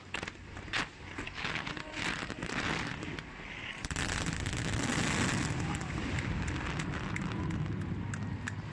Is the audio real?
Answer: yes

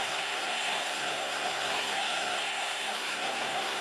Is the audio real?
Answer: no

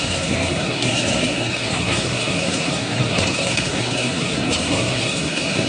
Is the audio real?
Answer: no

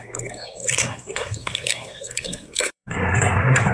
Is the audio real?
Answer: no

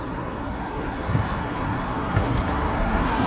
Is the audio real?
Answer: no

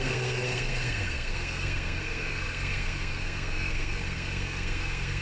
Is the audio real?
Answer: no